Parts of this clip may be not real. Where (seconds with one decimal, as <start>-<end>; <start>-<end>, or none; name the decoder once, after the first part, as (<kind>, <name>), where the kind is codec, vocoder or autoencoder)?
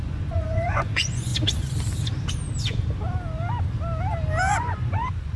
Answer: 0.0-1.3 (vocoder, Vocos); 4.5-5.4